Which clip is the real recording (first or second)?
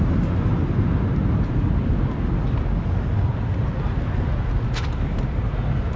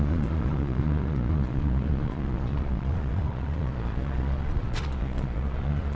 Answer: first